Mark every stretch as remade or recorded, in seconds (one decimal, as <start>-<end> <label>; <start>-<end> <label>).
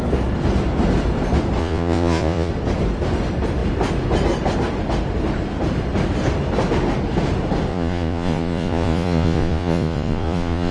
0.0-1.6 recorded; 1.6-2.5 remade; 2.5-7.7 recorded; 7.7-10.7 remade